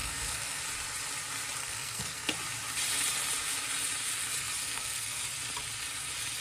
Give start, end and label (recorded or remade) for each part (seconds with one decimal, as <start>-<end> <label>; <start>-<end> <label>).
0.0-0.6 remade; 0.6-1.6 recorded; 1.6-2.3 remade; 2.3-4.6 recorded; 4.6-5.2 remade; 5.2-6.4 recorded

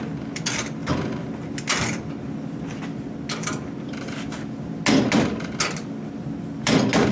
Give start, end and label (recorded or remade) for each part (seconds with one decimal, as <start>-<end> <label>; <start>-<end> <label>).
0.0-7.1 recorded

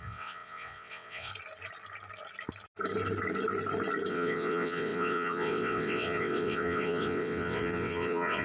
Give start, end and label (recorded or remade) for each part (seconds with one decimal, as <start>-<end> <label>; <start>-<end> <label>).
0.0-1.3 remade; 1.3-4.1 recorded; 4.1-8.4 remade

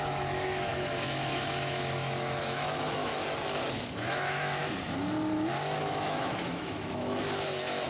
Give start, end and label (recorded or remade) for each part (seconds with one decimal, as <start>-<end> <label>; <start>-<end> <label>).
0.0-3.1 remade; 3.1-3.7 recorded; 3.7-4.6 remade; 4.6-5.8 recorded; 5.8-7.9 remade

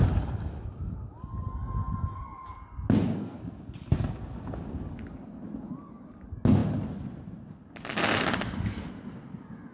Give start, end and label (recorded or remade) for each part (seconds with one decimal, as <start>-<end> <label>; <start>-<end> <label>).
0.0-3.1 recorded; 3.1-3.6 remade; 3.6-9.7 recorded